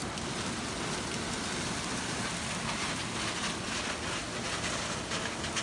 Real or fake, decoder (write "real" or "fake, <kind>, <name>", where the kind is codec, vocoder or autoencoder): real